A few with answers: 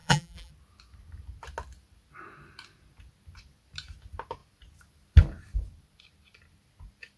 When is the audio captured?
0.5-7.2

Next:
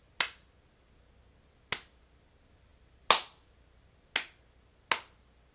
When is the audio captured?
0.0-5.5

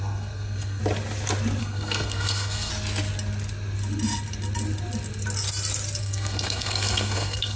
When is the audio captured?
0.8-1.6; 2.7-6.0

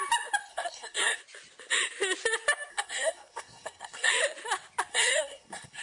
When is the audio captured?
0.0-0.5; 1.2-2.7; 4.1-4.9

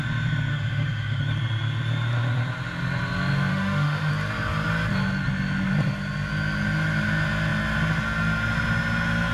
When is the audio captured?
0.0-0.5; 1.2-3.5; 4.1-9.3

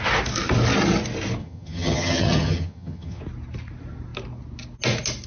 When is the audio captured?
0.0-1.4; 3.2-5.3